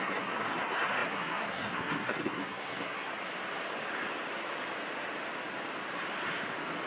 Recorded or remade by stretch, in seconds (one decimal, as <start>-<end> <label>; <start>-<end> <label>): 0.0-3.1 remade; 3.1-6.9 recorded